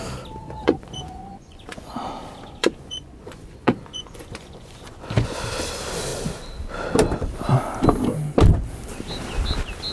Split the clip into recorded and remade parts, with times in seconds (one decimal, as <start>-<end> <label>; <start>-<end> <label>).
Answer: 0.0-0.4 recorded; 0.4-2.0 remade; 2.0-2.6 recorded; 2.6-5.4 remade; 5.4-9.9 recorded